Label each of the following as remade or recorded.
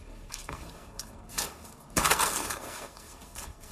remade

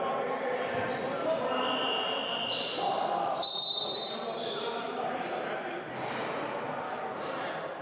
recorded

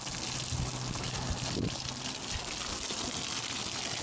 recorded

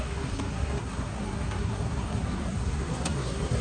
remade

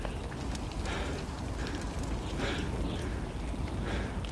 recorded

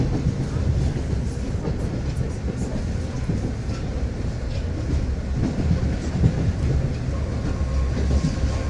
recorded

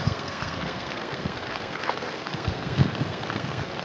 remade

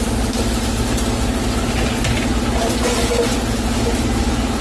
recorded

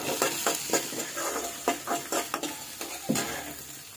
recorded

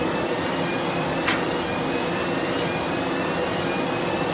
recorded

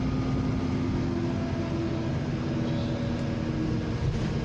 recorded